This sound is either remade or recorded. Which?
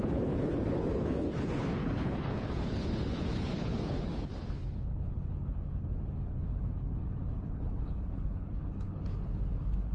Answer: remade